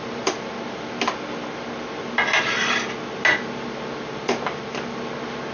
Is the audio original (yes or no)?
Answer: yes